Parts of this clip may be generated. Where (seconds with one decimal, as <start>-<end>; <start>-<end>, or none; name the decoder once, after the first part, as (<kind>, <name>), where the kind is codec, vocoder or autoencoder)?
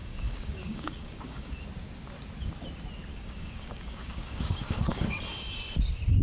0.0-1.5 (codec, DAC); 3.1-5.2